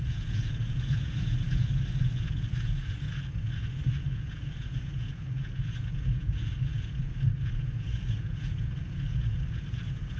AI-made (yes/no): yes